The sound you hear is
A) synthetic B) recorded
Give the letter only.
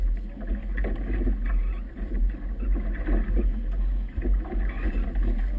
B